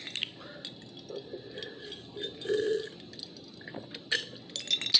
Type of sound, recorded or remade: recorded